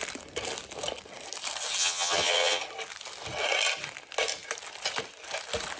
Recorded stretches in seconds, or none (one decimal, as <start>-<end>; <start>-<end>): 0.0-1.8; 2.6-5.8